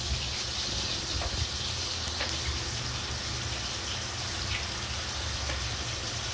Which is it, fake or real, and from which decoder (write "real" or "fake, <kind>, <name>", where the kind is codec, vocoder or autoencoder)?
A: real